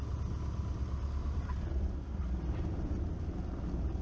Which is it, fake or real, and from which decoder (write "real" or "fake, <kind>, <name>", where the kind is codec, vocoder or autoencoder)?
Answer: real